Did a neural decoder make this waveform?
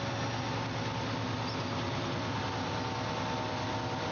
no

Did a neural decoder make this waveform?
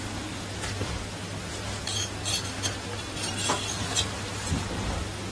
no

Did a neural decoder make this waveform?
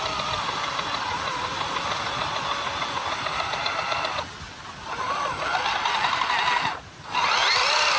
no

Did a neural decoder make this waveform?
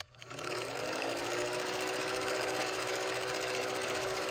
yes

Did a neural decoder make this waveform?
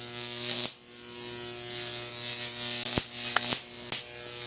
no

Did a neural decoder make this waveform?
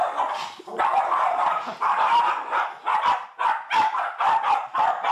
no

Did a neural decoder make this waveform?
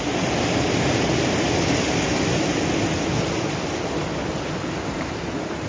no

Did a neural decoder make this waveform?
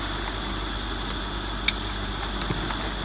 no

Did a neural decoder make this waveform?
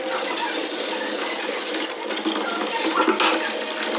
no